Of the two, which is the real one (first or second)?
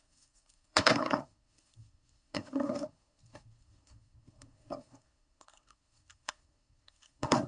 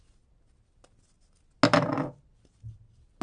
second